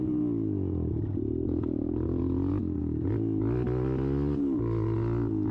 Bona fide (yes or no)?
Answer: yes